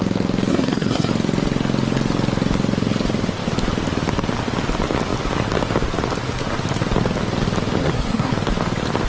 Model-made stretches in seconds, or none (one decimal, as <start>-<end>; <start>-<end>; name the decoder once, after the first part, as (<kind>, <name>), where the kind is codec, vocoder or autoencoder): 0.5-1.1 (codec, SNAC); 7.8-8.3